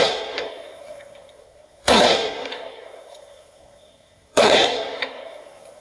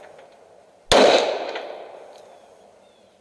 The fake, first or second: first